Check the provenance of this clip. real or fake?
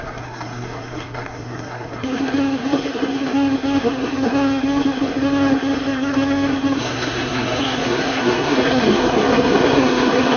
fake